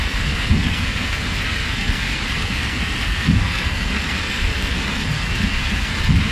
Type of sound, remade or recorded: remade